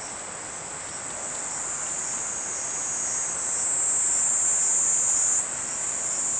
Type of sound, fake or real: real